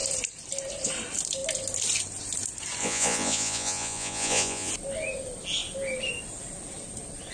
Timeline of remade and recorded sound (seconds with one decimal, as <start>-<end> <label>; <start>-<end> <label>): 0.0-2.8 recorded; 2.8-4.7 remade; 4.7-7.3 recorded